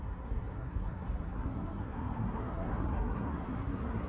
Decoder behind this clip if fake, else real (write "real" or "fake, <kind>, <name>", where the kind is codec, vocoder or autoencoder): fake, codec, SNAC